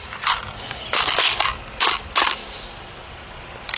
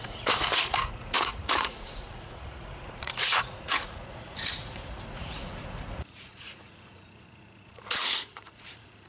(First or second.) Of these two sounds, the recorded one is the first